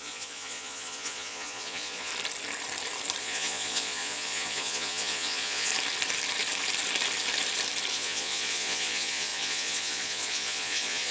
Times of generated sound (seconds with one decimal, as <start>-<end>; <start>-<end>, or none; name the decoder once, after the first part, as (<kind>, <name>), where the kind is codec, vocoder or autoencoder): 0.0-2.1 (vocoder, Vocos); 3.2-5.7; 7.9-11.1